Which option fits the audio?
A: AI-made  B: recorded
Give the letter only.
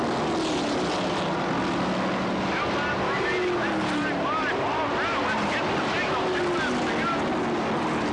B